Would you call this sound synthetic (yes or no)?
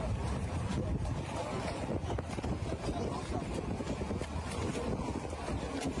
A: no